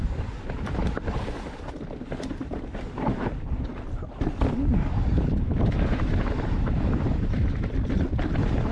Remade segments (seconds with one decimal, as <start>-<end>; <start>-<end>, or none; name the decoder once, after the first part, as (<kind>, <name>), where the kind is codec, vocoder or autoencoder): 0.0-3.7 (vocoder, BigVGAN v2); 6.5-8.7